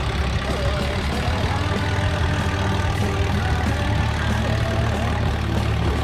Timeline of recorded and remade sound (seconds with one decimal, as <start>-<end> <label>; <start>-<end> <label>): 0.0-6.0 recorded